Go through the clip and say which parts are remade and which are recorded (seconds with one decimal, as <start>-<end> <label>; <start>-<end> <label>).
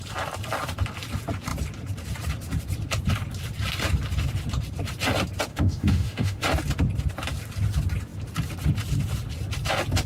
0.0-5.5 recorded; 5.5-6.4 remade; 6.4-10.1 recorded